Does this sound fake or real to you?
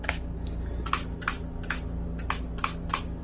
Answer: real